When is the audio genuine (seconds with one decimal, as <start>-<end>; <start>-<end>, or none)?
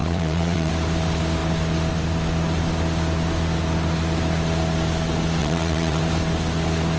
0.7-5.4; 6.0-7.0